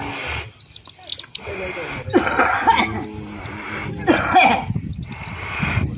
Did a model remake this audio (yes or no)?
no